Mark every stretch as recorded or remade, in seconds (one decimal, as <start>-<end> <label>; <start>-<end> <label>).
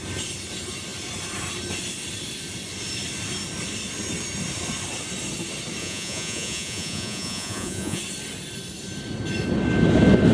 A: 0.0-5.8 recorded; 5.8-8.0 remade; 8.0-10.3 recorded